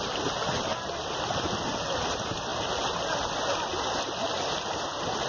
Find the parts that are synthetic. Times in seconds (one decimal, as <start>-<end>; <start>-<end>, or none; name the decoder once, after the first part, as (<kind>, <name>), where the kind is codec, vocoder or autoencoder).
none